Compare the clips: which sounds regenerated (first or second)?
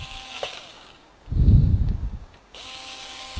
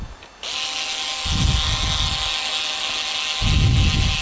first